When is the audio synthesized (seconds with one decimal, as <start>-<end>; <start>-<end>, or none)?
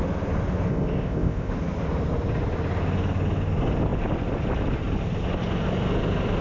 0.7-1.5